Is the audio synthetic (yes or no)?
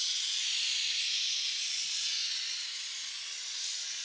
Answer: no